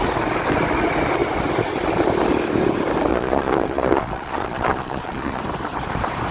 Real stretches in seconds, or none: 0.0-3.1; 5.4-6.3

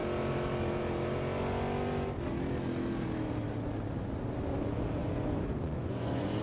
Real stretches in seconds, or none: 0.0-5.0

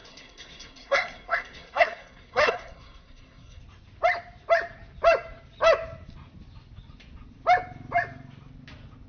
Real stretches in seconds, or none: 3.6-9.1